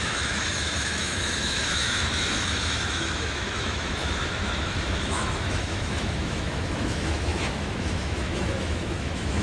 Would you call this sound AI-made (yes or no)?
yes